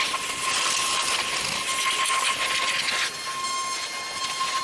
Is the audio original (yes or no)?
yes